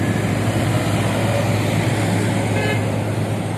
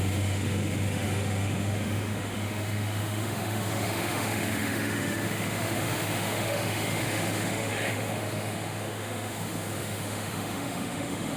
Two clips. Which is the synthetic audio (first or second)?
second